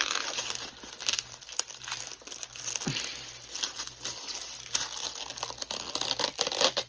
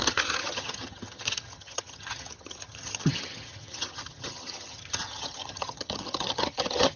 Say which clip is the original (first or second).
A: first